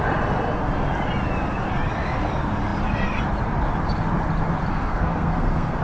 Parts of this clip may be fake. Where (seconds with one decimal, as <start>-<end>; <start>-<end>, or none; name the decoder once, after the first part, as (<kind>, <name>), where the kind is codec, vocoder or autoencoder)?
4.7-5.8 (codec, SNAC)